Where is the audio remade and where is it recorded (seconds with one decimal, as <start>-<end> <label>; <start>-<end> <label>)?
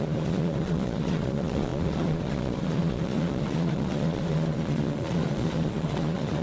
0.0-6.4 remade